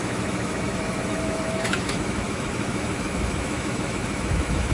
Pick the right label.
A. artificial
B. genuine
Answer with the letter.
A